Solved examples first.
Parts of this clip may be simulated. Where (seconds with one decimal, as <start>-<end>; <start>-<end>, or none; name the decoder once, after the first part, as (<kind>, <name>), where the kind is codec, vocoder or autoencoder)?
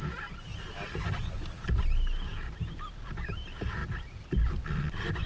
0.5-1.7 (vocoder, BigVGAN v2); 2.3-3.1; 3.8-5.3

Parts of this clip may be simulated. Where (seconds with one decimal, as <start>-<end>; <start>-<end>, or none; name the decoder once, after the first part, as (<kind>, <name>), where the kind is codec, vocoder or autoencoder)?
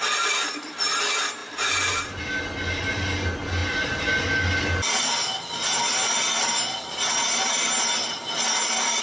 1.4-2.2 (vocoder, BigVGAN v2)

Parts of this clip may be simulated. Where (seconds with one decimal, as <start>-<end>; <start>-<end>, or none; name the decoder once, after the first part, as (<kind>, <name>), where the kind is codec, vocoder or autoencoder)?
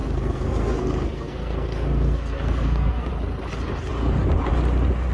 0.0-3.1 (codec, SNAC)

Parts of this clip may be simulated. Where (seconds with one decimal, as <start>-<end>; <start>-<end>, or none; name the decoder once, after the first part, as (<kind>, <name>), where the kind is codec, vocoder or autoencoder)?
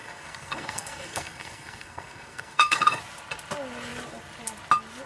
0.0-3.0 (codec, SNAC)